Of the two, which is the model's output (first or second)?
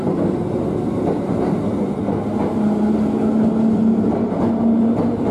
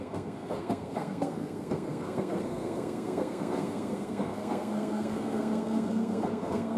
second